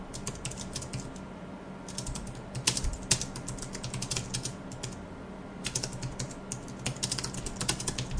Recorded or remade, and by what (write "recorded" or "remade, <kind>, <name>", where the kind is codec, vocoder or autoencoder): recorded